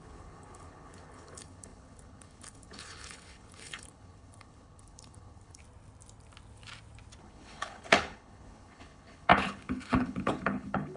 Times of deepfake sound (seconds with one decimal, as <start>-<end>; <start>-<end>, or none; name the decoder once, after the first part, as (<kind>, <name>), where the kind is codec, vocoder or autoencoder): 0.0-5.6 (codec, HILCodec); 7.2-11.0